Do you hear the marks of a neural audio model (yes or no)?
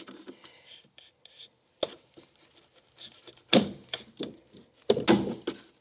no